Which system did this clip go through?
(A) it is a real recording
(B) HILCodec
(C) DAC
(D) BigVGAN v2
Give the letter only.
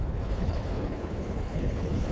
B